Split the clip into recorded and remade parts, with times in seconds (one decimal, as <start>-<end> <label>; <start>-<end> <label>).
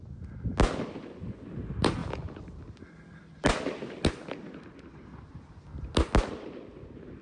0.0-7.2 recorded